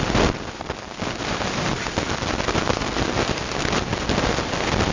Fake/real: real